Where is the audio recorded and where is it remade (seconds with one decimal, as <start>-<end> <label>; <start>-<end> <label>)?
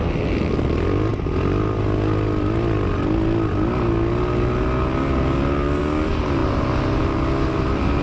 0.0-8.0 recorded